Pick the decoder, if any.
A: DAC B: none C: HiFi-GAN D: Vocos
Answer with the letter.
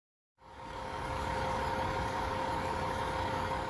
A